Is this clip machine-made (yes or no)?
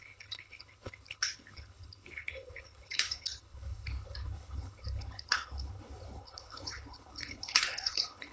yes